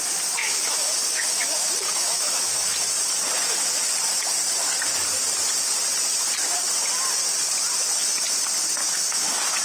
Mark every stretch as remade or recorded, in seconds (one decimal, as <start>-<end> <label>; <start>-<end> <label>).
0.0-0.4 recorded; 0.4-2.7 remade; 2.7-8.8 recorded; 8.8-9.6 remade